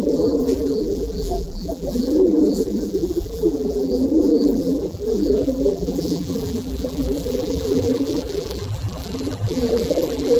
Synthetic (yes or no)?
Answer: yes